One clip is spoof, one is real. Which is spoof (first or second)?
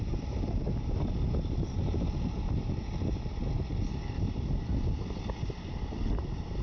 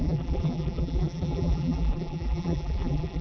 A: second